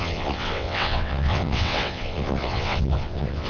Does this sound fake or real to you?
fake